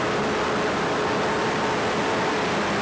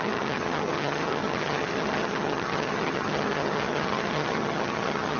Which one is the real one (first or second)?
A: first